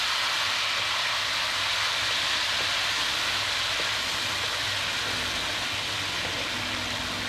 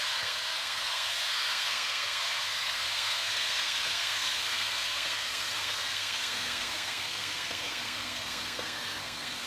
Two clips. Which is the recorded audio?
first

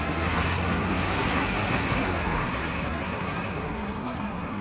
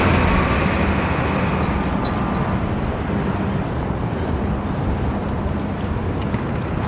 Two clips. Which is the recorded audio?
second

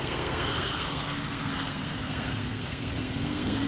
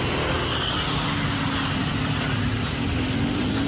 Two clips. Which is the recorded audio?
second